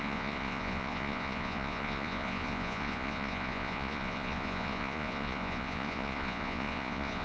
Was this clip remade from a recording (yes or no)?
yes